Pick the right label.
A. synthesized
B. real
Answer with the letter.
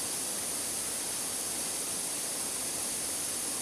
B